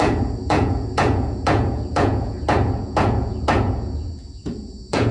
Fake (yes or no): yes